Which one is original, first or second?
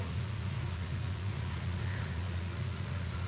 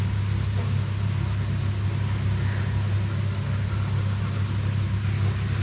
second